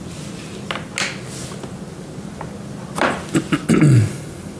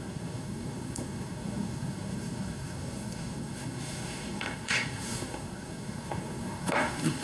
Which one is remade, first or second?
second